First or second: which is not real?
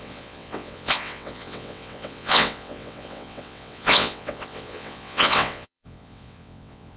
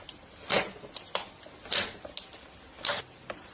first